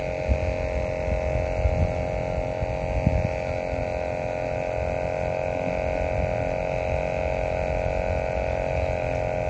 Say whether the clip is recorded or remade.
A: recorded